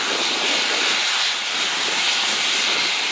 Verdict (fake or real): fake